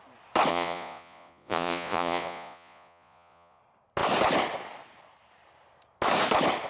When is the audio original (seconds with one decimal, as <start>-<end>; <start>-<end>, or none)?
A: 0.0-0.5; 3.6-6.7